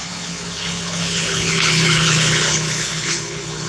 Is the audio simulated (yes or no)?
yes